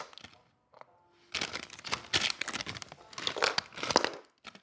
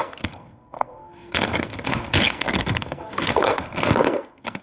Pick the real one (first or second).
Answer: first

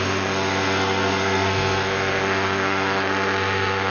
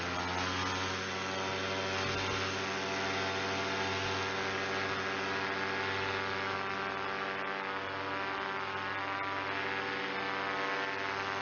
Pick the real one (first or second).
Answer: second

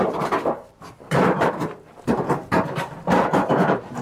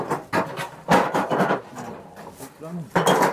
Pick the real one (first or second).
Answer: second